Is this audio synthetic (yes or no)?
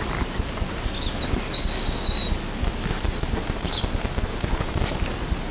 no